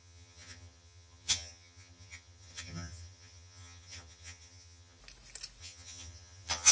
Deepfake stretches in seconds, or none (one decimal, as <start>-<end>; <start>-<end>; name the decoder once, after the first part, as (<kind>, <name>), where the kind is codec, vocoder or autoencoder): 0.0-5.0 (vocoder, HiFi-GAN); 5.6-6.7